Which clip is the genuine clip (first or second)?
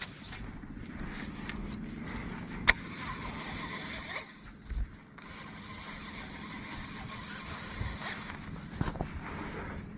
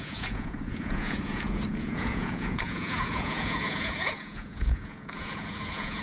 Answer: first